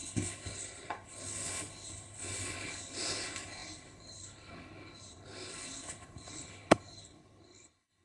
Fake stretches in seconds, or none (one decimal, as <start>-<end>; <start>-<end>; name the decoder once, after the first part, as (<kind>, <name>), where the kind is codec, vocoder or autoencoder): 0.0-8.0 (codec, HILCodec)